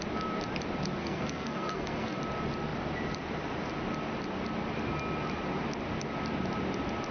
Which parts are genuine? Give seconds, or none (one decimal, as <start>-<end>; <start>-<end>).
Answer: 0.0-1.0; 2.2-7.1